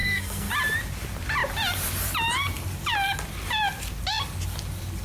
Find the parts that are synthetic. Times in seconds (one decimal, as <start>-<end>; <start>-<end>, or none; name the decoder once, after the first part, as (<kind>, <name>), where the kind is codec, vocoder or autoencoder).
0.0-0.5 (codec, SNAC)